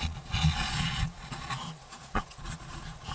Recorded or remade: remade